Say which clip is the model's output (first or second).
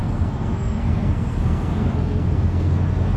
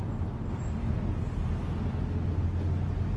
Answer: first